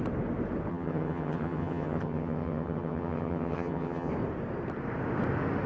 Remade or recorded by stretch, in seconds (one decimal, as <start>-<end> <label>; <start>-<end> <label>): 0.0-0.7 recorded; 0.7-4.1 remade; 4.1-5.7 recorded